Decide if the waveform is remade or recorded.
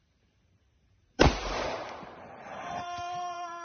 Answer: remade